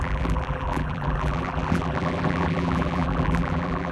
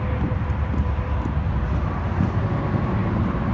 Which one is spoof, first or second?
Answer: first